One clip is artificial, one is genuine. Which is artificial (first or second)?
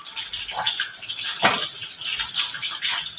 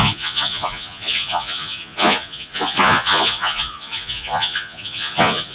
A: second